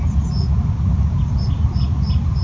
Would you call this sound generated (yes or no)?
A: no